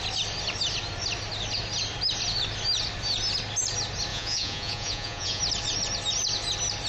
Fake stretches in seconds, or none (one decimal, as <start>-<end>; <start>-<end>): 4.1-5.4